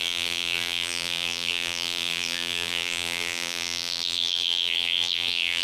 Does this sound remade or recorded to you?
remade